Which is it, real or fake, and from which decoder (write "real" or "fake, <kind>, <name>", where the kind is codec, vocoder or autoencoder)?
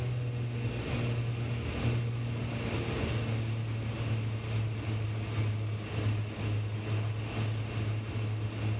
real